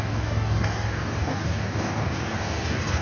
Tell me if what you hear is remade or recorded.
remade